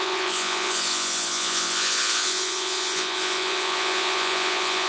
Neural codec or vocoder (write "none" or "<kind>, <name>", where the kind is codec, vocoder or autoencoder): vocoder, Vocos